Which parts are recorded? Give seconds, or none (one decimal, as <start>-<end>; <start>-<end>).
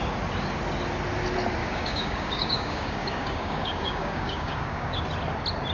0.0-1.6; 5.0-5.7